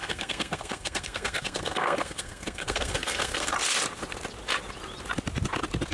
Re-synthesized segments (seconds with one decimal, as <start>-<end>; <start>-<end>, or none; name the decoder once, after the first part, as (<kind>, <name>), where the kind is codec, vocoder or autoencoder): 0.0-3.5 (codec, SNAC)